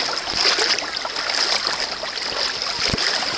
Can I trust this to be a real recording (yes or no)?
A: yes